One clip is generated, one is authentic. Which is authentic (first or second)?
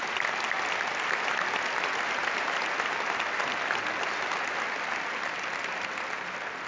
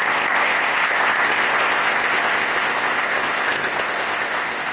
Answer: first